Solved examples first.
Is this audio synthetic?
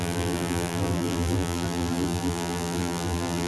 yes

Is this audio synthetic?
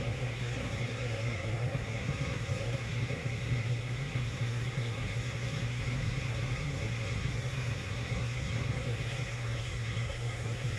yes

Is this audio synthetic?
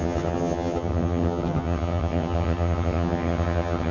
yes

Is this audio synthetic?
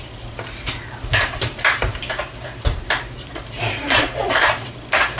yes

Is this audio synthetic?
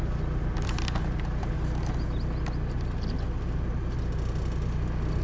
no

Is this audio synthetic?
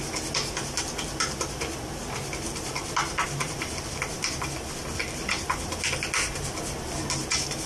no